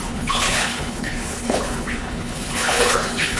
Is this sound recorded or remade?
remade